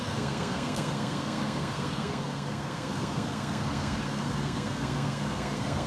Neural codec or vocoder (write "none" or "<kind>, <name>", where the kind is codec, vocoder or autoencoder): codec, SNAC